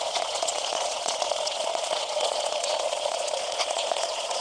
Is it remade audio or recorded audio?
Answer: remade